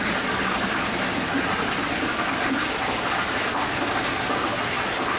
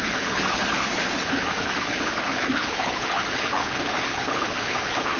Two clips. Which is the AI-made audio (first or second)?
second